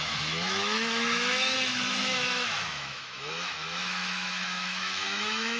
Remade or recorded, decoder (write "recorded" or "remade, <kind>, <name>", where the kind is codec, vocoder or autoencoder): remade, autoencoder, DAC-VAE